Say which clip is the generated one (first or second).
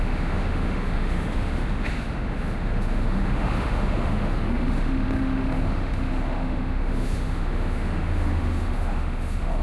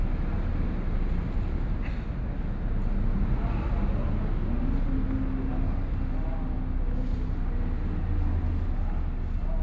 first